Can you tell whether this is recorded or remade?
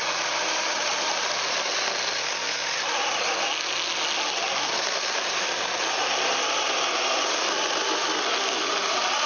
recorded